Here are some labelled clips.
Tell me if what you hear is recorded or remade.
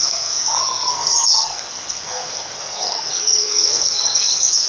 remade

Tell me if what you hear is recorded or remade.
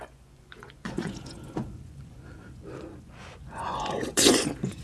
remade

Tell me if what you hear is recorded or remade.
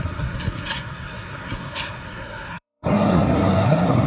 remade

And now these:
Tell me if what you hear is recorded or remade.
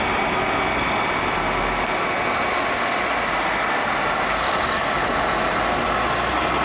recorded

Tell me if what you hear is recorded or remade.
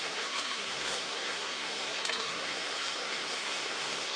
remade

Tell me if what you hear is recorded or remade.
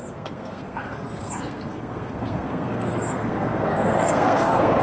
remade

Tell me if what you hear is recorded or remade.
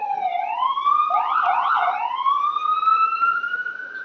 remade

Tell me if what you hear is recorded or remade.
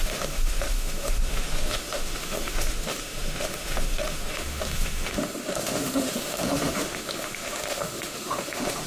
remade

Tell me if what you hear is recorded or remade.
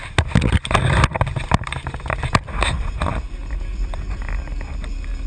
recorded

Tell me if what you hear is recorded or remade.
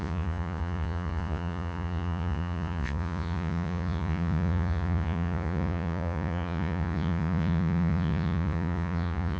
remade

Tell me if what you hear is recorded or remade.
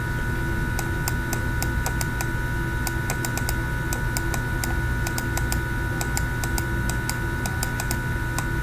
recorded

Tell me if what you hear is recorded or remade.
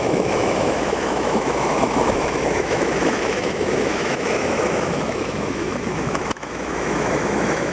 remade